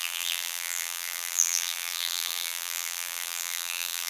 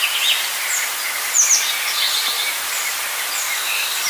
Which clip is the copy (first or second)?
first